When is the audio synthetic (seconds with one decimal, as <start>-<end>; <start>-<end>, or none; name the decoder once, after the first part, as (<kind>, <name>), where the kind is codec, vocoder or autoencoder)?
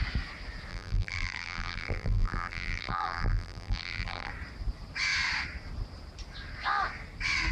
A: 0.7-4.3 (vocoder, BigVGAN v2)